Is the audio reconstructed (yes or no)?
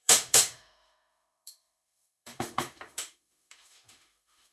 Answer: yes